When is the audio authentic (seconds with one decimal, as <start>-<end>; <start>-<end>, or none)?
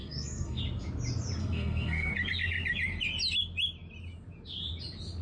0.6-1.4; 2.1-5.2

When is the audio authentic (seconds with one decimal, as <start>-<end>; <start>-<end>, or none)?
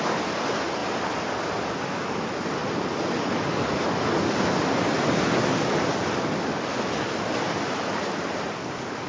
0.0-9.1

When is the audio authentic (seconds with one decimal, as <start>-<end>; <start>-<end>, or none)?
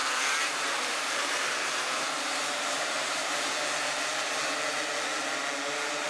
3.5-6.1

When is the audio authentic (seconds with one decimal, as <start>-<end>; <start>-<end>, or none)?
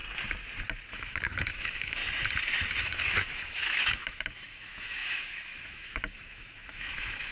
0.0-0.9; 2.0-2.8